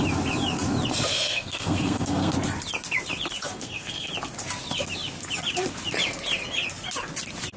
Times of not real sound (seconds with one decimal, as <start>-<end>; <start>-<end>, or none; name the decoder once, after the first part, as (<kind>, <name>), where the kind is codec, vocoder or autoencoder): 1.1-2.3 (codec, SNAC); 3.4-4.1